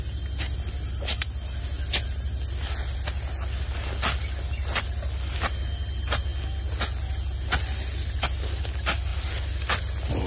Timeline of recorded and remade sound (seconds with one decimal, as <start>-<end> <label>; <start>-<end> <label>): 0.0-10.3 recorded